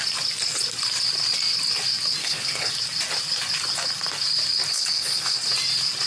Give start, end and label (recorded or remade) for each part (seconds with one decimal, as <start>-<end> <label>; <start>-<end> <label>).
0.0-2.2 recorded; 2.2-2.7 remade; 2.7-4.7 recorded; 4.7-5.4 remade; 5.4-6.1 recorded